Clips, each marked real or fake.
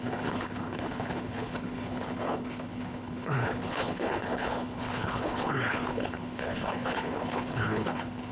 fake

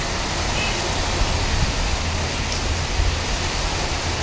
real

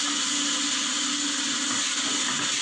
real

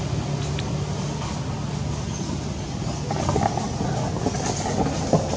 real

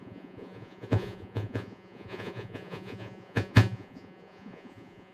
fake